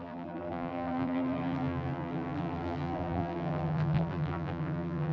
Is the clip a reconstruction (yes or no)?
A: yes